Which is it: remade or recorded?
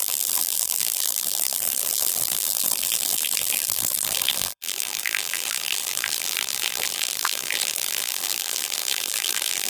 remade